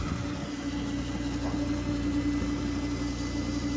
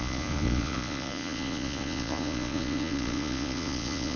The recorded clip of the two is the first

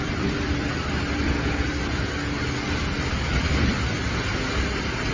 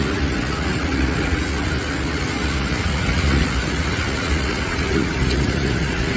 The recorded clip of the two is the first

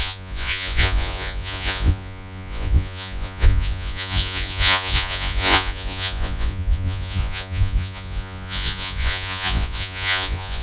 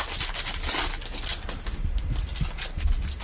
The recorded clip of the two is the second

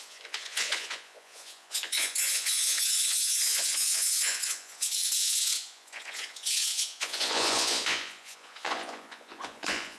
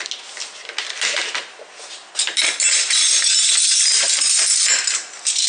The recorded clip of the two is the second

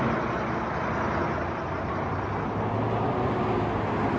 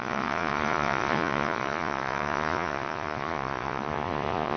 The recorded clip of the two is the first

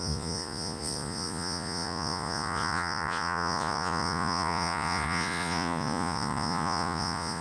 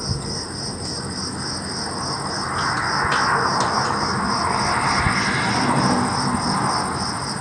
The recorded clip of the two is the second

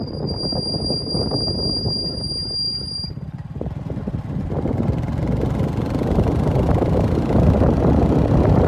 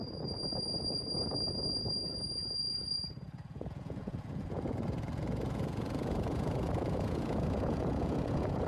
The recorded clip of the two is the first